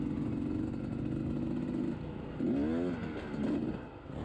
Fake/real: real